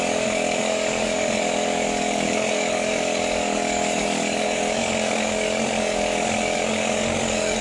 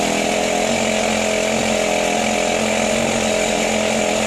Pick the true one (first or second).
second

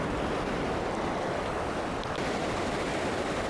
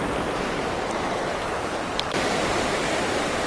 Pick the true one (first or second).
first